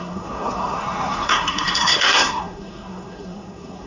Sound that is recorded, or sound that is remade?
remade